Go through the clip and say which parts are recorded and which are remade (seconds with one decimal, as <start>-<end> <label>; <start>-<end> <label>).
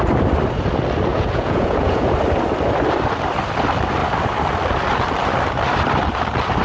0.0-1.1 recorded; 1.1-2.1 remade; 2.1-6.6 recorded